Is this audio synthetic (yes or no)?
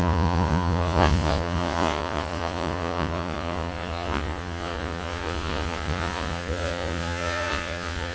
yes